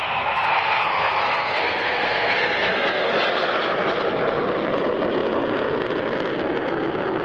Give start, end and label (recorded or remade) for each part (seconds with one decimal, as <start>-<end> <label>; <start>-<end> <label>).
0.0-3.1 remade; 3.1-7.2 recorded